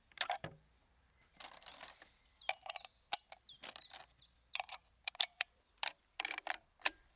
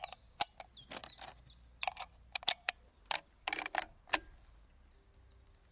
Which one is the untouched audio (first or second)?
second